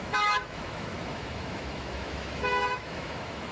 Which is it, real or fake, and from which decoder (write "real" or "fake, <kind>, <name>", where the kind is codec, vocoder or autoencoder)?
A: fake, autoencoder, DAC-VAE